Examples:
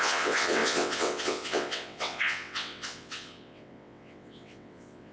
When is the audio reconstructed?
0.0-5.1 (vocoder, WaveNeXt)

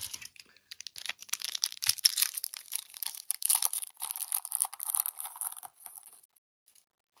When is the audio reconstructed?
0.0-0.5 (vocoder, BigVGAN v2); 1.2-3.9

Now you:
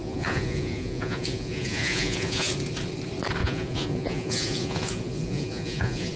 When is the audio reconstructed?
0.0-2.5 (vocoder, Vocos); 3.4-6.2

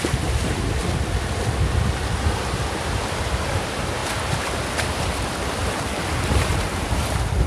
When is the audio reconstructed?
0.0-0.8 (vocoder, BigVGAN v2); 3.5-4.0; 6.2-7.5

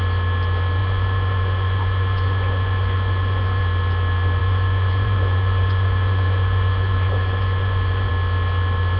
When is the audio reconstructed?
0.8-3.6 (vocoder, Vocos); 4.4-8.1

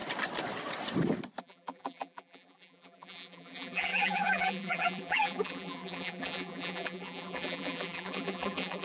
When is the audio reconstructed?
1.4-8.8 (vocoder, BigVGAN v2)